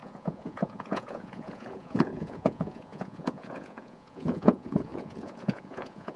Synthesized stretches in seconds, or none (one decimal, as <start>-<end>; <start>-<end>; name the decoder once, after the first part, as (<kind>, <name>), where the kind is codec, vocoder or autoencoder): 0.0-6.2 (vocoder, Vocos)